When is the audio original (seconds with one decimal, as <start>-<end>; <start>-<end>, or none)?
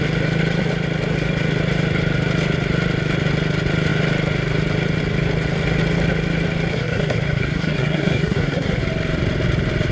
0.0-6.7; 8.8-9.9